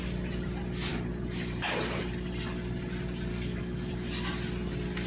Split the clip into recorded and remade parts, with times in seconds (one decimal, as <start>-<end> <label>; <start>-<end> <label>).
0.0-3.3 recorded; 3.3-3.9 remade; 3.9-5.1 recorded